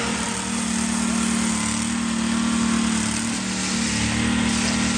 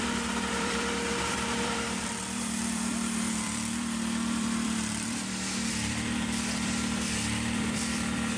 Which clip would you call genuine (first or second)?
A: first